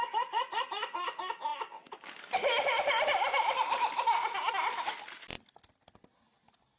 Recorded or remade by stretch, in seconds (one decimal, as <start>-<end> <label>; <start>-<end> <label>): 0.0-1.5 recorded; 1.5-4.5 remade; 4.5-6.8 recorded